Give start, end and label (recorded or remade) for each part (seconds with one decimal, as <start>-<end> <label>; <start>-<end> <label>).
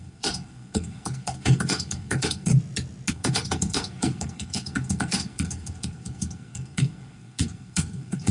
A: 0.0-2.5 remade; 2.5-3.1 recorded; 3.1-8.3 remade